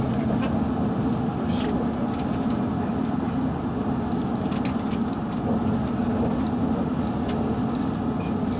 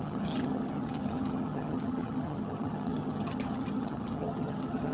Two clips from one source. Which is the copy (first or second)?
second